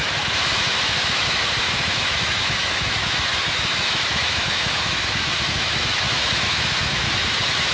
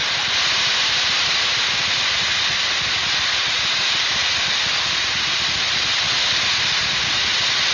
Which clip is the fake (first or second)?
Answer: first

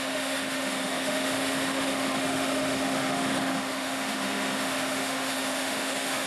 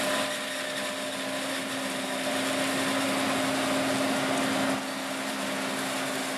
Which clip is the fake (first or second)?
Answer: first